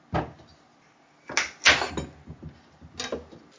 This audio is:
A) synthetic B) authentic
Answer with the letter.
B